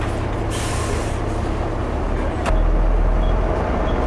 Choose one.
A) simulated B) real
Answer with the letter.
B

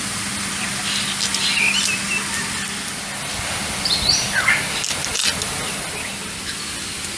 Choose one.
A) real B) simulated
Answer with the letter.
A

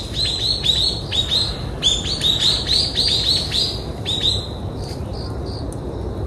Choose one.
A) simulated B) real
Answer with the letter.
B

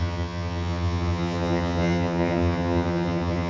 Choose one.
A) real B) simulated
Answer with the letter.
B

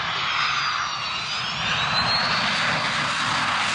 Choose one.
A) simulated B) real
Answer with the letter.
B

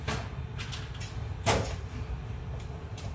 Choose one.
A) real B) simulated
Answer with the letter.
A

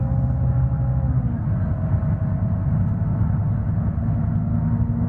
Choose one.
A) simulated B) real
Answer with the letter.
B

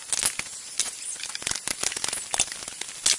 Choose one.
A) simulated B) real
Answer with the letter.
B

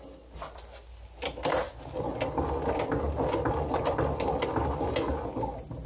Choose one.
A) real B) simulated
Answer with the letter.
A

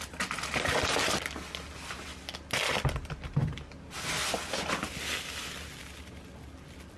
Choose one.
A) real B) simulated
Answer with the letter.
A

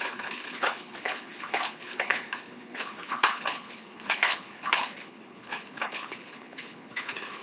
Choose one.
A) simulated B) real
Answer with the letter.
A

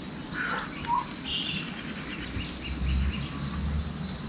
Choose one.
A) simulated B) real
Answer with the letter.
B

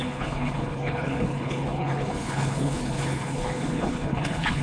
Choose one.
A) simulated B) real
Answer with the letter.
A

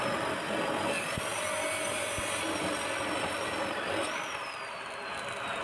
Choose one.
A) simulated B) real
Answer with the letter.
B